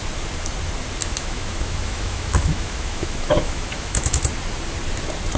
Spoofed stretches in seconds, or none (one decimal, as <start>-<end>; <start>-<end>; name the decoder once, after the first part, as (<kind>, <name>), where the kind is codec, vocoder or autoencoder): 1.0-4.2 (autoencoder, DAC-VAE)